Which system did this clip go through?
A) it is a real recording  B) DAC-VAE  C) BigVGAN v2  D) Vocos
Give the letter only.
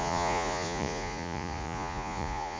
D